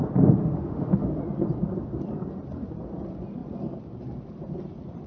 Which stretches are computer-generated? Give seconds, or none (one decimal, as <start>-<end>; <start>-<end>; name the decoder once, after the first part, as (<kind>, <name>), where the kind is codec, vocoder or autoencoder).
0.4-1.2 (autoencoder, DAC-VAE)

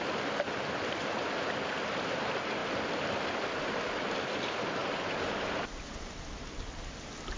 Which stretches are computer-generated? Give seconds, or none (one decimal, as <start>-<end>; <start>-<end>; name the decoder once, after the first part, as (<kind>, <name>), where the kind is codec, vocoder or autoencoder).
none

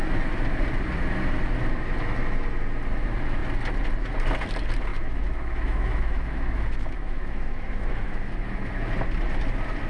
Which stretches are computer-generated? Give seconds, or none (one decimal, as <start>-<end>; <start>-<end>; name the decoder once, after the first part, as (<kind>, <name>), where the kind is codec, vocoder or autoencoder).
4.9-8.7 (autoencoder, DAC-VAE)

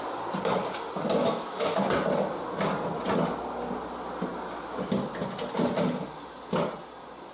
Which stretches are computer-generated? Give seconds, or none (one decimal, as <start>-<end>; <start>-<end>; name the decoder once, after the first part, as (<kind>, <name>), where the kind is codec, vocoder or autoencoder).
1.2-1.8 (autoencoder, DAC-VAE)